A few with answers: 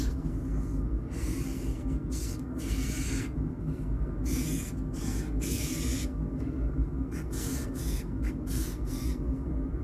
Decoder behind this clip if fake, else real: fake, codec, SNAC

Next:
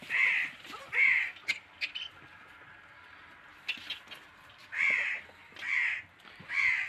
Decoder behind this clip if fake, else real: real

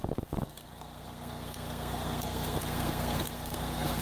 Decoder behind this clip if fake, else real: fake, codec, SNAC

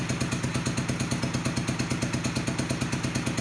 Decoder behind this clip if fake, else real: real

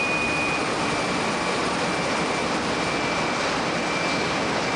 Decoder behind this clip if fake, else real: real